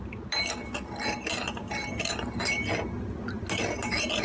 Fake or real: real